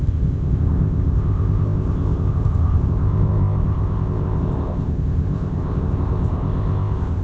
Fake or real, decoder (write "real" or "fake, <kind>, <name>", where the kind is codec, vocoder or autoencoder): fake, codec, ZipCodec